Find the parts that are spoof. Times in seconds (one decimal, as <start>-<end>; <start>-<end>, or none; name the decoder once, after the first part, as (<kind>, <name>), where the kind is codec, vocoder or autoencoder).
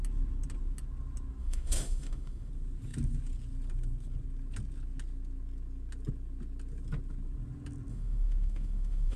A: 1.4-2.5 (autoencoder, DAC-VAE); 7.9-9.2